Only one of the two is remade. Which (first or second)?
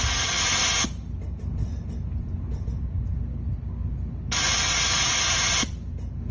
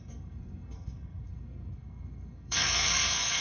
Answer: second